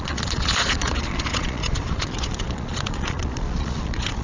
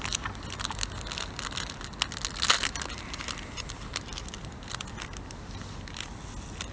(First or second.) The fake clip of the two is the first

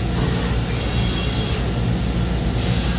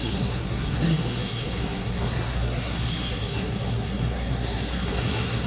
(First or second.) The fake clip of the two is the second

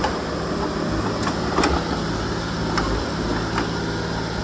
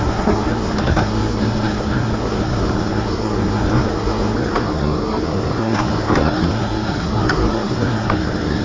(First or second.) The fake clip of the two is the second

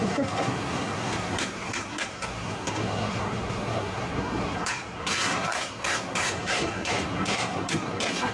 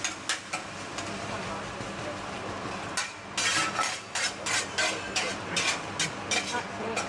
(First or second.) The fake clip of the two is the first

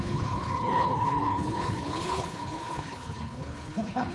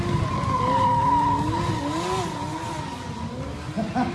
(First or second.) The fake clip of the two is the first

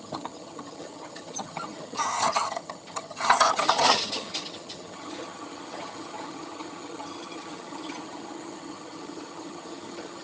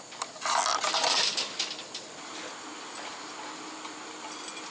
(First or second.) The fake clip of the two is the first